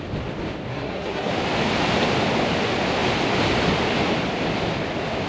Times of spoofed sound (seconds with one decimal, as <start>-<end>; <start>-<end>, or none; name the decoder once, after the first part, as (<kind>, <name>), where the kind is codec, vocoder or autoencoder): 0.7-1.3 (codec, SNAC)